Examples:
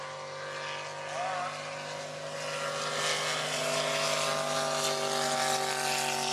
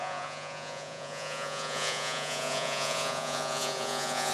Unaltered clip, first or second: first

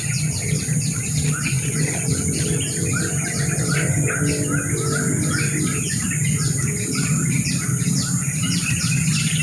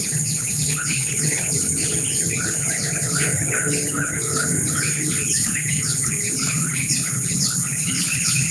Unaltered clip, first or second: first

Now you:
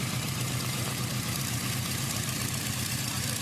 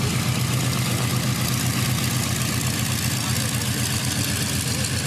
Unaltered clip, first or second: second